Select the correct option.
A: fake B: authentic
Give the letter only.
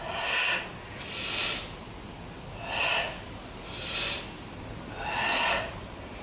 B